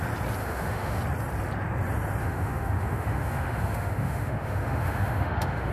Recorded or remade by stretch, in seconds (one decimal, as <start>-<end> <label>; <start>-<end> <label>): 0.0-0.4 recorded; 0.4-1.0 remade; 1.0-2.2 recorded; 2.2-5.7 remade